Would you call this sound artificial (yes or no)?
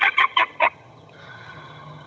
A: yes